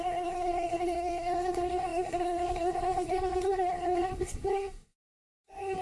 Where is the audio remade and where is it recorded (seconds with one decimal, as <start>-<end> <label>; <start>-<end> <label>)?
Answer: 0.0-5.8 remade